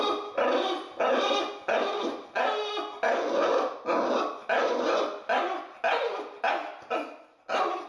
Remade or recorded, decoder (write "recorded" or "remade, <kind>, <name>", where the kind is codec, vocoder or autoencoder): recorded